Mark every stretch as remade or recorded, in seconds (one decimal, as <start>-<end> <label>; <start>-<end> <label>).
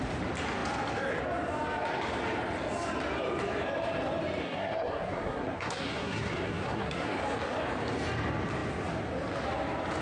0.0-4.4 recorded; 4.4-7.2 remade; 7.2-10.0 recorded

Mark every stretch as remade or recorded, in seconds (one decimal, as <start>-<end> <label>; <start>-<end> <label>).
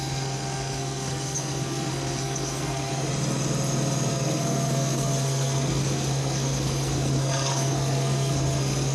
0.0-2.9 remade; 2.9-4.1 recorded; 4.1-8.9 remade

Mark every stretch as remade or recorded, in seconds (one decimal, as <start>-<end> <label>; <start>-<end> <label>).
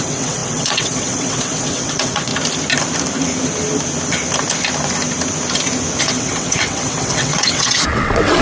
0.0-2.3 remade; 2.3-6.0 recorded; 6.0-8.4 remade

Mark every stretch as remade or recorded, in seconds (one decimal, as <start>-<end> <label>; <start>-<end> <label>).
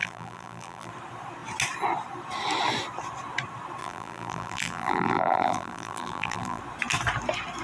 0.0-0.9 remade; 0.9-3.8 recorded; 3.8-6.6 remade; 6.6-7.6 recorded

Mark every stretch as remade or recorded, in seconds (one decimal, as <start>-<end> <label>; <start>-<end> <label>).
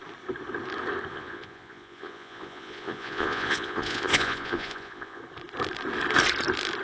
0.0-1.1 recorded; 1.1-5.2 remade; 5.2-6.8 recorded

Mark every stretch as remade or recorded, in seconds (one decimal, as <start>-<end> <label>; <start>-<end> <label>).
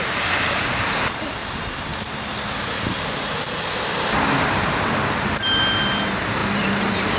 0.0-1.4 remade; 1.4-2.6 recorded; 2.6-7.2 remade